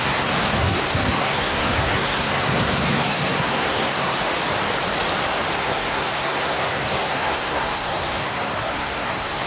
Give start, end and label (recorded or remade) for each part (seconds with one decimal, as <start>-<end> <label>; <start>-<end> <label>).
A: 0.0-4.2 remade; 4.2-5.6 recorded; 5.6-9.5 remade